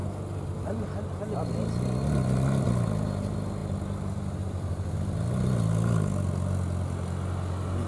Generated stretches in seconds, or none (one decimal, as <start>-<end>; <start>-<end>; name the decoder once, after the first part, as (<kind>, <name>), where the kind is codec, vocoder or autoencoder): none